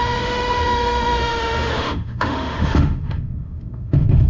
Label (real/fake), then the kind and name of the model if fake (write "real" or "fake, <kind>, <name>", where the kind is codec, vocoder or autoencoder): fake, autoencoder, DAC-VAE